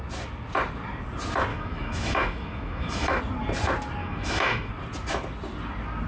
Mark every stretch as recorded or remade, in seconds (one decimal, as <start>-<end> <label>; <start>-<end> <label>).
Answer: 0.0-1.5 recorded; 1.5-3.2 remade; 3.2-4.0 recorded; 4.0-4.7 remade; 4.7-6.1 recorded